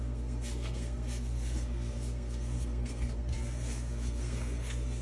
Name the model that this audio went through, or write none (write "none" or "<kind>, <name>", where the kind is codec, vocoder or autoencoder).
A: codec, SNAC